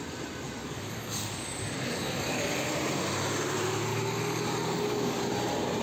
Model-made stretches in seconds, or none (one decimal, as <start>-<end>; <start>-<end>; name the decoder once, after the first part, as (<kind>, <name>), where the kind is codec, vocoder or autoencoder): 0.6-2.5 (codec, DAC); 3.9-5.2